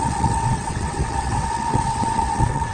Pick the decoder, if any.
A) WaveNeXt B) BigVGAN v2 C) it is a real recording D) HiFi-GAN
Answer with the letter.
A